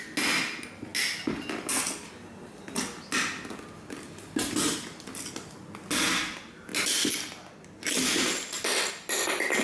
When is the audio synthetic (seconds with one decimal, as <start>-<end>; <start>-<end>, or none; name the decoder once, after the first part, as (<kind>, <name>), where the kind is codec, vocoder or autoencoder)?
none